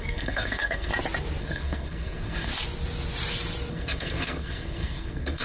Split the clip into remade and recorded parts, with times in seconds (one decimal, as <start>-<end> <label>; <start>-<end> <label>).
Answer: 0.0-0.9 remade; 0.9-1.4 recorded; 1.4-2.5 remade; 2.5-3.7 recorded; 3.7-5.4 remade